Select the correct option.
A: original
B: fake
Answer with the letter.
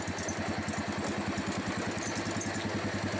A